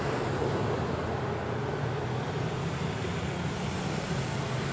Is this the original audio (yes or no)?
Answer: yes